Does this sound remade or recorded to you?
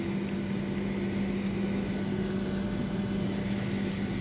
recorded